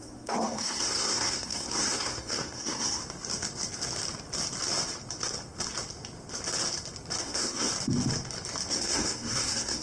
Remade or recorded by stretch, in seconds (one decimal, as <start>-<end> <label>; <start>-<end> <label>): 0.0-3.0 remade; 3.0-7.2 recorded; 7.2-7.7 remade; 7.7-8.7 recorded; 8.7-9.8 remade